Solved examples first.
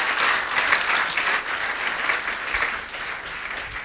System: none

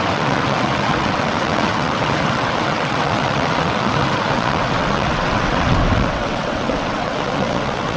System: vocoder, WaveNeXt